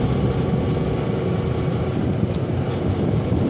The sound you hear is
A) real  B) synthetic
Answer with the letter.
B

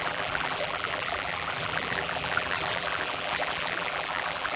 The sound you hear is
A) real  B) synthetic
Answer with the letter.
B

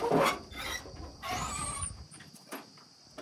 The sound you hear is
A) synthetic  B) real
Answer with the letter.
B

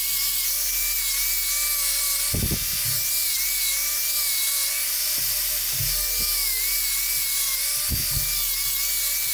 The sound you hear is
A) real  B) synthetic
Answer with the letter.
A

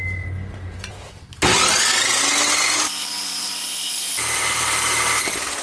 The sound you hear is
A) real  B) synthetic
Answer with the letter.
A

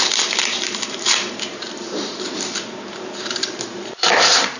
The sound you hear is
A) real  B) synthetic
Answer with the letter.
B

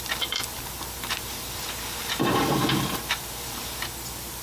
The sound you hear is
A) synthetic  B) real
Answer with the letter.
A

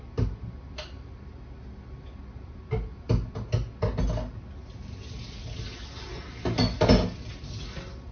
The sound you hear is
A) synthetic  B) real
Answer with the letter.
B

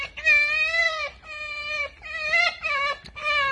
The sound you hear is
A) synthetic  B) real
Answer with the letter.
B